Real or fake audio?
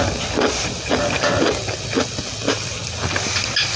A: real